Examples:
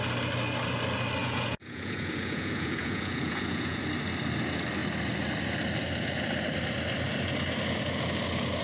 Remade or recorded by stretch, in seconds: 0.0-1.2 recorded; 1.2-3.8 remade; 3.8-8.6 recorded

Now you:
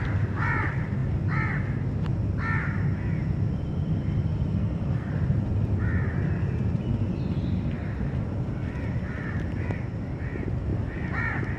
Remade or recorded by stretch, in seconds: 0.0-4.6 recorded; 4.6-5.1 remade; 5.1-11.6 recorded